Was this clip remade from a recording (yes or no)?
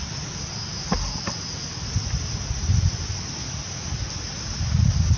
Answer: no